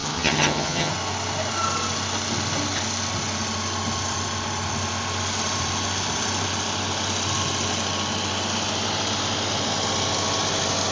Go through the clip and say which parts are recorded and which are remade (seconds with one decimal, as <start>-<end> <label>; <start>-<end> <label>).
0.0-0.9 remade; 0.9-10.9 recorded